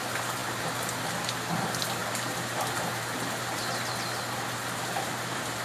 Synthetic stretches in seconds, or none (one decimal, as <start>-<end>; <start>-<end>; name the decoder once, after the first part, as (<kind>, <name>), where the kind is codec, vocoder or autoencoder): 2.0-3.7 (vocoder, BigVGAN v2); 4.6-5.6